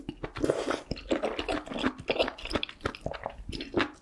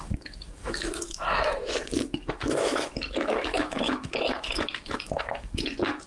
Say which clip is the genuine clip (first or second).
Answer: first